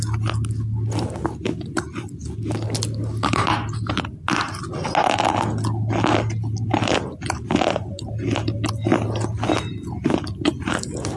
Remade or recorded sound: recorded